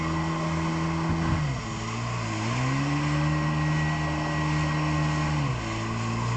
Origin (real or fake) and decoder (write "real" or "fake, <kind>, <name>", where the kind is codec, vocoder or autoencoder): real